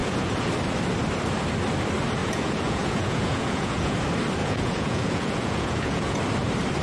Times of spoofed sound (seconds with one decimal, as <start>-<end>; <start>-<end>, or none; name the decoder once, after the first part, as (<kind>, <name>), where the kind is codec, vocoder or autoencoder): 0.0-0.5 (vocoder, Vocos); 2.2-4.0; 4.4-6.2